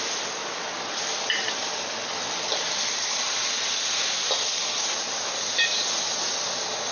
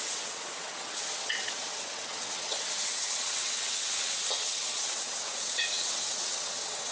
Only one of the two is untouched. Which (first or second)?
first